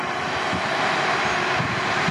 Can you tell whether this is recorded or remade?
recorded